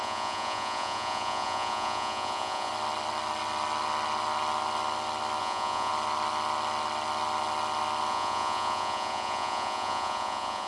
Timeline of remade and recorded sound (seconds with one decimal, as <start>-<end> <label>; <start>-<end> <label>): 0.0-2.7 remade; 2.7-5.4 recorded; 5.4-5.9 remade; 5.9-8.1 recorded; 8.1-10.7 remade

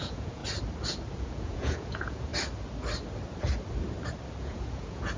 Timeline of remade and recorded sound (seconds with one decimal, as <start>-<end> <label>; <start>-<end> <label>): 0.0-0.4 remade; 0.4-1.2 recorded; 1.2-2.3 remade; 2.3-4.4 recorded; 4.4-5.2 remade